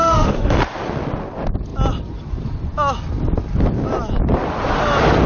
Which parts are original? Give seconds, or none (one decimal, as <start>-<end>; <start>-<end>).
0.6-5.3